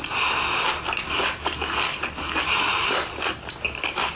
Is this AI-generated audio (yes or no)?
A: no